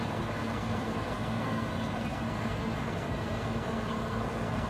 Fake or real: fake